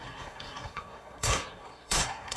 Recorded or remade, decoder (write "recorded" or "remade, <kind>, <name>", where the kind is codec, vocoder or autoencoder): remade, codec, SNAC